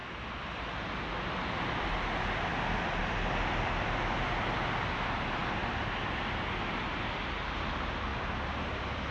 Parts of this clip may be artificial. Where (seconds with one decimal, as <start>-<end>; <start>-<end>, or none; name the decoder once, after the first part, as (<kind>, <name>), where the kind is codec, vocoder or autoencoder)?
0.0-0.9 (vocoder, BigVGAN v2); 8.1-9.1